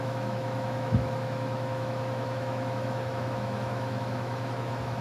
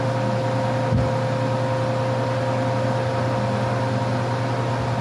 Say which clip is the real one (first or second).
second